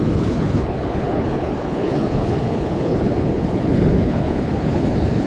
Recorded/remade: remade